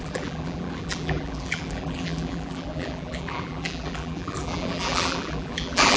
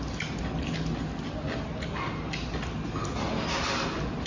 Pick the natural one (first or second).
second